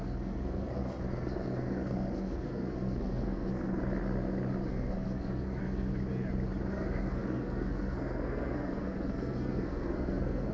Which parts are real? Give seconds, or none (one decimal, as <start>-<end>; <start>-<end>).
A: 3.8-4.7; 5.9-6.7